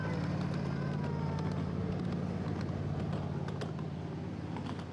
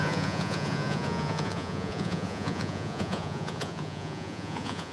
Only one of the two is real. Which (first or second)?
first